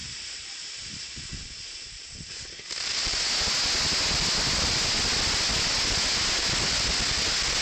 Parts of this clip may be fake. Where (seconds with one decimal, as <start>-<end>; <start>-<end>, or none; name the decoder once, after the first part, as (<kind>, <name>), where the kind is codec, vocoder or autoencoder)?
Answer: 0.0-2.7 (vocoder, BigVGAN v2)

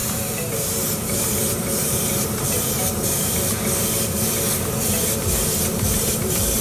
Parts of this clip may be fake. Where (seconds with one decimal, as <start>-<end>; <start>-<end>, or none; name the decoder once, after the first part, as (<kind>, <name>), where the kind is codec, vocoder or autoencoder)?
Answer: 0.0-3.5 (vocoder, BigVGAN v2); 6.0-6.6

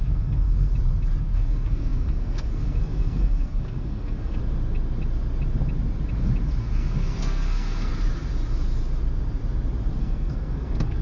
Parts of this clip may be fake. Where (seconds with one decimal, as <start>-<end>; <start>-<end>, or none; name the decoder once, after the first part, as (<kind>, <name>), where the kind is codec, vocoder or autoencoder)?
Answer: 0.0-0.7 (codec, SNAC); 1.2-4.4; 6.6-7.9; 10.0-11.0